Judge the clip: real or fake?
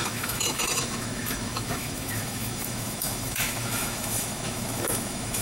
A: fake